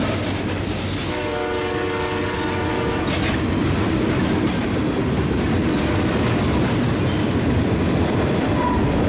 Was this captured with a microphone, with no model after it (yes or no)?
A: yes